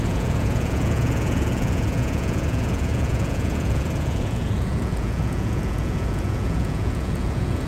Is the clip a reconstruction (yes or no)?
yes